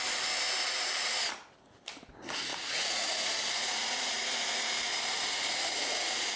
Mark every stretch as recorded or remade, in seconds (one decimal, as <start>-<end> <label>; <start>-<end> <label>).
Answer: 0.0-0.6 recorded; 0.6-1.3 remade; 1.3-2.5 recorded; 2.5-6.4 remade